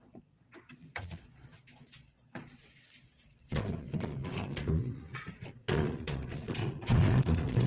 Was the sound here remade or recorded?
remade